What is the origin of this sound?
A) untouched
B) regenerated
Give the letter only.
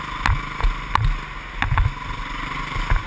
A